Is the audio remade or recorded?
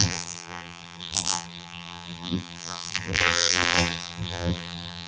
remade